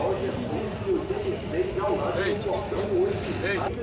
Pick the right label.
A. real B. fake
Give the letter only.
A